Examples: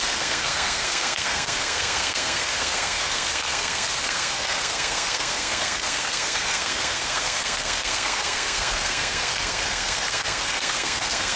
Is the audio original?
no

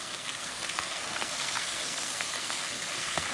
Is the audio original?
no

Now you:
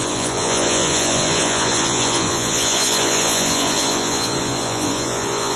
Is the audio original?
no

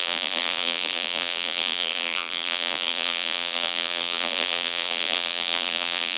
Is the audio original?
no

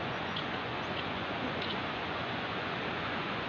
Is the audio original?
no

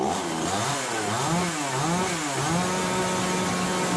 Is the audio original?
yes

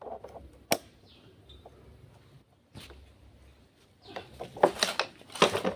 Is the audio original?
yes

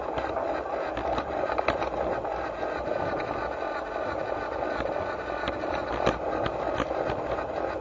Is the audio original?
yes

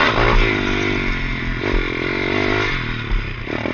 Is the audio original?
yes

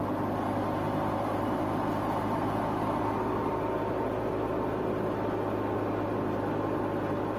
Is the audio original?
yes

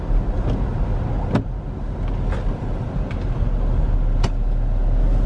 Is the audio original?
yes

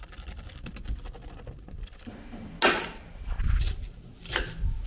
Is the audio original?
yes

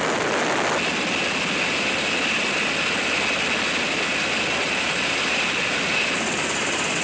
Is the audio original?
yes